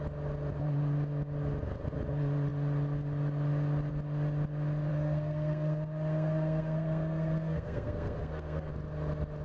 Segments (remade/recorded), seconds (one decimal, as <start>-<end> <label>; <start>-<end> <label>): 0.0-4.9 recorded; 4.9-8.7 remade; 8.7-9.4 recorded